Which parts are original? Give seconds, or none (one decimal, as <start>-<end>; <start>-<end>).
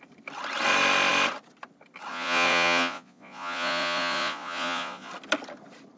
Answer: 0.0-2.1; 5.1-6.0